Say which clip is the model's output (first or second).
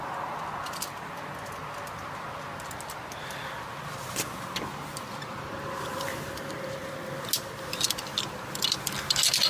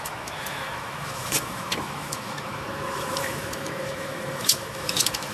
second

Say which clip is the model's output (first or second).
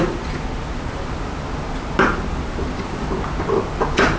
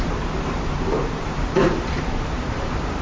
second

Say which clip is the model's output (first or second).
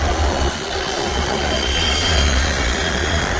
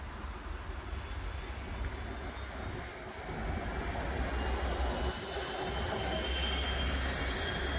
first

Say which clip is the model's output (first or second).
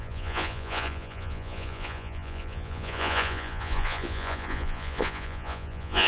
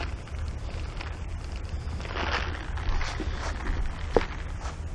first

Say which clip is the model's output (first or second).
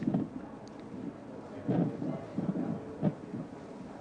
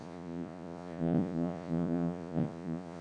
second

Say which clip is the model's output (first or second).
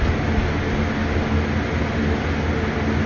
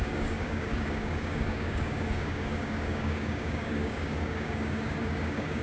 second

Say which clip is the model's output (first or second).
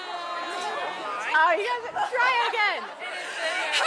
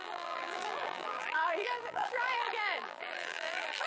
second